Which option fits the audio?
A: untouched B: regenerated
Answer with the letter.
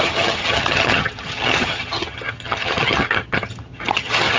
B